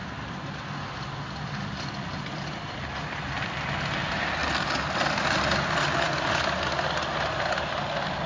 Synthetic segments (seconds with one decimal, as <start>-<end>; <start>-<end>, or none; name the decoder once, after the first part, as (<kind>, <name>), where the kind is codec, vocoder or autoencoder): none